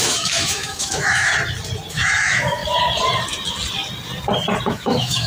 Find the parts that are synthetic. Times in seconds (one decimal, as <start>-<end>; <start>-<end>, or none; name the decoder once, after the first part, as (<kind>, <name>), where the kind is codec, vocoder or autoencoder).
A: 0.0-1.3 (autoencoder, DAC-VAE); 1.9-2.6; 4.7-5.3